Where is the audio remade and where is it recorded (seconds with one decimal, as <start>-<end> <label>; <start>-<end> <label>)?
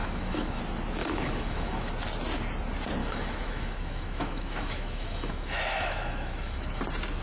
0.0-0.6 remade; 0.6-1.0 recorded; 1.0-1.9 remade; 1.9-3.0 recorded; 3.0-6.8 remade; 6.8-7.2 recorded